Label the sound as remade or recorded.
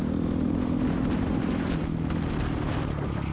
recorded